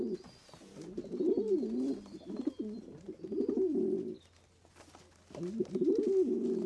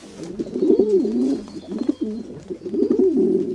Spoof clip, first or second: second